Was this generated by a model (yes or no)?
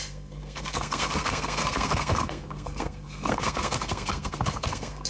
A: yes